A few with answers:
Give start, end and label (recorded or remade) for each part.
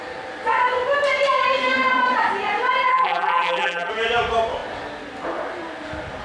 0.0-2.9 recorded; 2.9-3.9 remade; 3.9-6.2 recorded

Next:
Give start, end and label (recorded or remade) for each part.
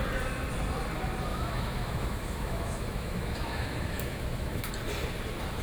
0.0-1.3 recorded; 1.3-4.7 remade; 4.7-5.6 recorded